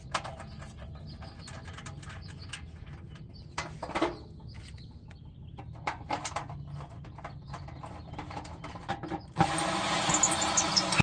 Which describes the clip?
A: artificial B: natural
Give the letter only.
B